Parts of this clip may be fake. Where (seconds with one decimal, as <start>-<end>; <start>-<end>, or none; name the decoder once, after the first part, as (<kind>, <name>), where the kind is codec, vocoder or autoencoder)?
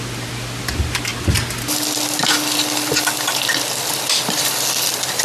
none